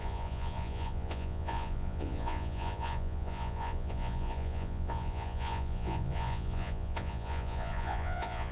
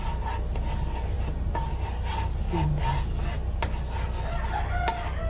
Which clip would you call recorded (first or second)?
second